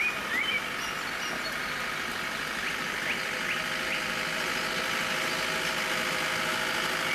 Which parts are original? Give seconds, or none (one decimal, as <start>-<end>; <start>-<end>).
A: 0.0-7.1